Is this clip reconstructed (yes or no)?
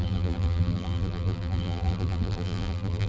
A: yes